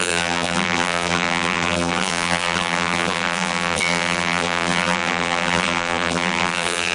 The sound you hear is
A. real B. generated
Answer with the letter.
B